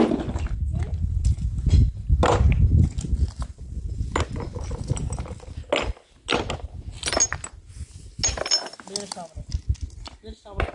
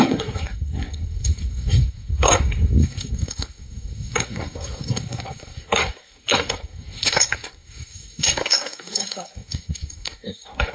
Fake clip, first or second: second